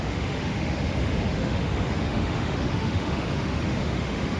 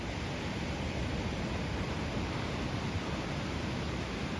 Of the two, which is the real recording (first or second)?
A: second